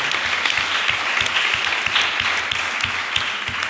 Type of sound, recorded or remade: recorded